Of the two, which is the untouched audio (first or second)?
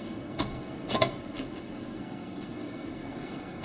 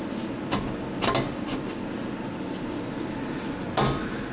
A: second